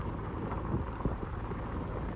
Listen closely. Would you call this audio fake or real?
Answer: real